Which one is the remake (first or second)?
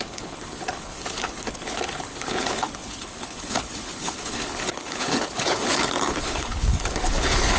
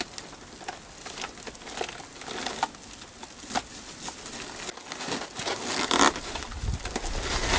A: first